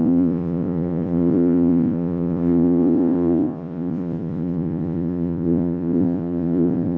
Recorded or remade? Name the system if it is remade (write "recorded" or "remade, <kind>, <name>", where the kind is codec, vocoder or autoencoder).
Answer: remade, vocoder, Vocos